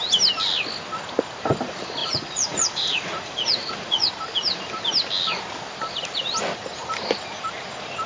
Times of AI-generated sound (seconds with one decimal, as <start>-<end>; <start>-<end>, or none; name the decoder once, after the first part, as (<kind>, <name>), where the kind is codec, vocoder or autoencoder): 2.0-4.1 (vocoder, Vocos)